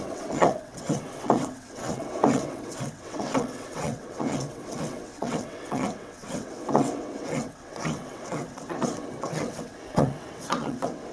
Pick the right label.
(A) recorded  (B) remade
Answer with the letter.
B